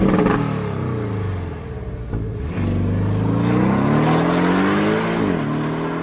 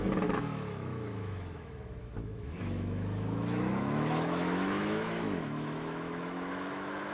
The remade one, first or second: second